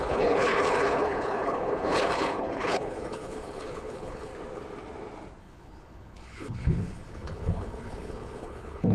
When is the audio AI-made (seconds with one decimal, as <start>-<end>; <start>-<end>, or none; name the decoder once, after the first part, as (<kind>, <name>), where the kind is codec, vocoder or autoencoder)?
0.0-4.3 (codec, HILCodec); 5.4-8.9